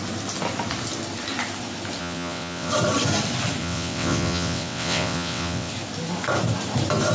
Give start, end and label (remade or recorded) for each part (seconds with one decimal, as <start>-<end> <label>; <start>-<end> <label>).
0.0-2.0 recorded; 2.0-2.7 remade; 2.7-3.6 recorded; 3.6-5.7 remade; 5.7-7.1 recorded